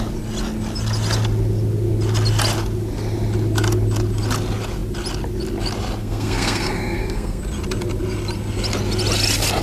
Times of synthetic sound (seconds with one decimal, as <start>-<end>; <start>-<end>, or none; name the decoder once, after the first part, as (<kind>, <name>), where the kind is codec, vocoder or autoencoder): 6.0-7.4 (codec, SNAC)